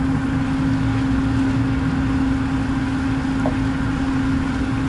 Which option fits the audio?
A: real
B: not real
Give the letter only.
A